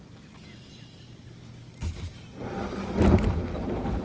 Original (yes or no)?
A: yes